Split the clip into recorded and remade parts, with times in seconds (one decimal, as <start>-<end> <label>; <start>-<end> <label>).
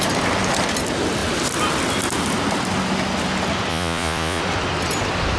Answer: 0.0-3.7 recorded; 3.7-4.4 remade; 4.4-5.4 recorded